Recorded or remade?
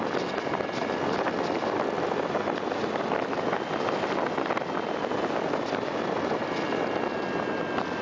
recorded